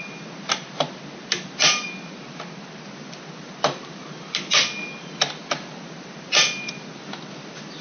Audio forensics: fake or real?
real